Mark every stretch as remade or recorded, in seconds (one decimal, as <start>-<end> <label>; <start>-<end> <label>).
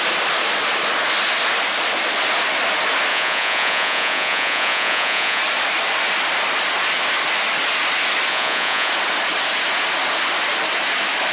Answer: 0.0-3.1 recorded; 3.1-5.4 remade; 5.4-8.3 recorded; 8.3-8.9 remade; 8.9-11.3 recorded